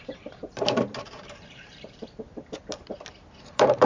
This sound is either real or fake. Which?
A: fake